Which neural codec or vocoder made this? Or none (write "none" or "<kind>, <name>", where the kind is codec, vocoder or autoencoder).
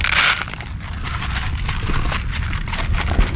none